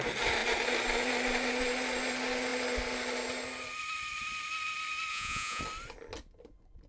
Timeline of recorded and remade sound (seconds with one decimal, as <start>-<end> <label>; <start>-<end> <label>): 0.0-5.1 recorded; 5.1-5.6 remade; 5.6-6.9 recorded